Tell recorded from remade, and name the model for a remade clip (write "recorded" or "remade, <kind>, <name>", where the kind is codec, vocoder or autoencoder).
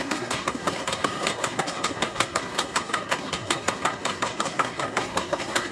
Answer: remade, codec, SNAC